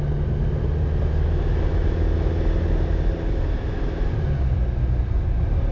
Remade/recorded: recorded